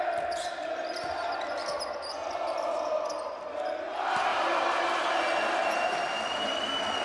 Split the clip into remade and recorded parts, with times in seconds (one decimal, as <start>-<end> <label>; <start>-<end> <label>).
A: 0.0-4.3 recorded; 4.3-5.1 remade; 5.1-5.6 recorded; 5.6-6.5 remade; 6.5-7.0 recorded